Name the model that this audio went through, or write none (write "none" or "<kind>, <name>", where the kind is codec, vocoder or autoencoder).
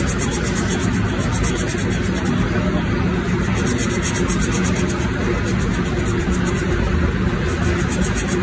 none